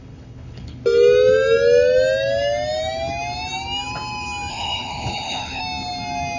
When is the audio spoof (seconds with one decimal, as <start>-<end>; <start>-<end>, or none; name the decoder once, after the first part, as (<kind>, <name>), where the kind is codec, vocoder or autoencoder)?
0.0-0.8 (codec, HILCodec); 4.5-5.6